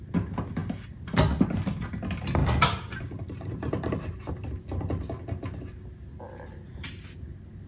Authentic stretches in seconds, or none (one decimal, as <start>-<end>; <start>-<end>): 0.0-2.4; 4.3-6.1; 6.9-7.7